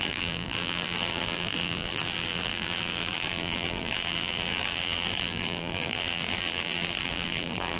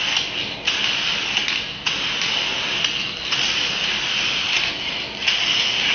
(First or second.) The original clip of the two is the second